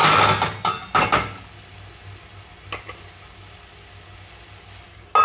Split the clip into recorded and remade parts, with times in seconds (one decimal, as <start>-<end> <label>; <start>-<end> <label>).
0.0-5.2 recorded